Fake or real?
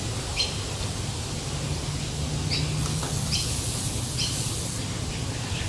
real